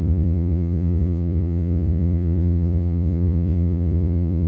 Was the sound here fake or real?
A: fake